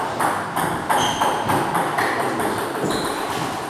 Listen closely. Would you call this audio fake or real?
real